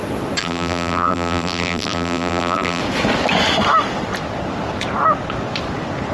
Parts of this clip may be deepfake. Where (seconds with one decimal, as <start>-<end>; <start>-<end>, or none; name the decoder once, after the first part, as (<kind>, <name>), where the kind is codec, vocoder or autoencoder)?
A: 0.4-2.8 (vocoder, BigVGAN v2)